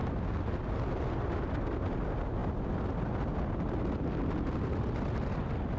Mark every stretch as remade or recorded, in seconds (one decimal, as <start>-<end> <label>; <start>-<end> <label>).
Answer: 0.0-5.8 recorded